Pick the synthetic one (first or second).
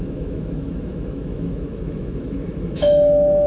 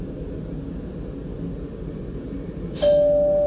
first